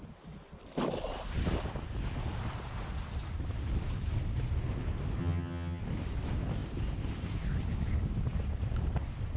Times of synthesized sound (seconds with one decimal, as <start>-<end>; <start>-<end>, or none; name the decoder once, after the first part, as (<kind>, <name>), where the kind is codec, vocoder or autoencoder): 5.2-5.8 (vocoder, HiFi-GAN)